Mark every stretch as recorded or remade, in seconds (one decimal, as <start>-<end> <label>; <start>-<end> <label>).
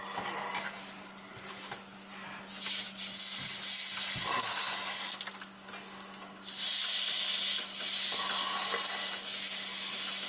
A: 0.0-10.3 recorded